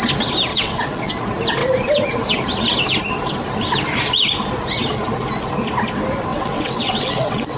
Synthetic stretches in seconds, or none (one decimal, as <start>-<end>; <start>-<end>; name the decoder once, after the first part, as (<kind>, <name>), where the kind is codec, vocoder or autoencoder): 0.5-1.1 (vocoder, WaveNeXt); 6.3-7.6